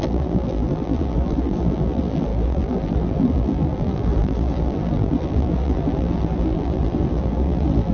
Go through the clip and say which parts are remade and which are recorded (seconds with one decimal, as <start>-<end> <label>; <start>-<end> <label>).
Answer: 0.0-7.9 remade